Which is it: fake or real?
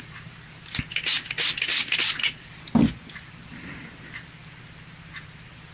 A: real